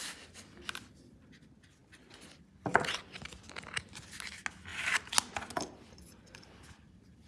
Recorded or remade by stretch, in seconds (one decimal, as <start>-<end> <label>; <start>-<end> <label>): 0.0-7.3 recorded